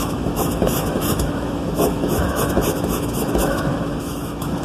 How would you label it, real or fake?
fake